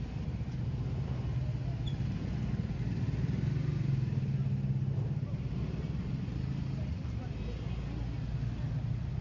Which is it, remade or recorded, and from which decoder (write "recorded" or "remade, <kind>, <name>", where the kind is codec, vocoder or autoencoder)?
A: recorded